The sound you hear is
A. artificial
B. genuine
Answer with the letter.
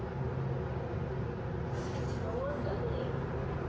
B